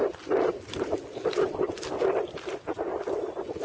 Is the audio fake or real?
real